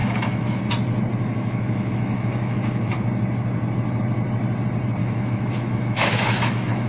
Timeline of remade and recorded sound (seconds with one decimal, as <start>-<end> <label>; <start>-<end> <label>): 0.0-0.6 remade; 0.6-1.1 recorded; 1.1-2.9 remade; 2.9-5.0 recorded; 5.0-6.9 remade